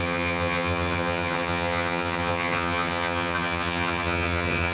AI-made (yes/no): yes